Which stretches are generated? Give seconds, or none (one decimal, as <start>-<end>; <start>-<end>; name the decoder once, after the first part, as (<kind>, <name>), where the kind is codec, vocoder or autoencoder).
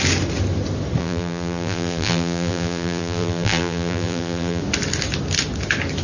1.0-4.6 (vocoder, BigVGAN v2)